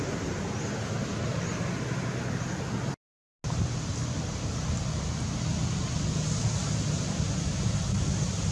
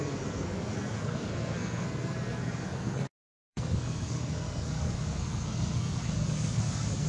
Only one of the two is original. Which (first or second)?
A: first